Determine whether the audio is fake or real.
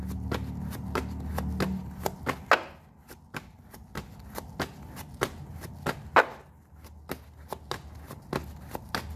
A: real